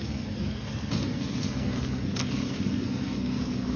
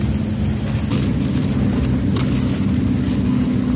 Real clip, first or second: second